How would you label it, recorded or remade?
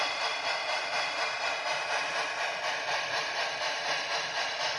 recorded